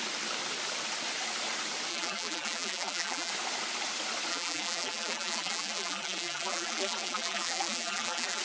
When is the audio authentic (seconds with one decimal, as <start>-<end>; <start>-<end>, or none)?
0.0-1.9; 3.3-4.3